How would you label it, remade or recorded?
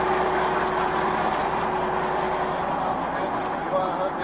recorded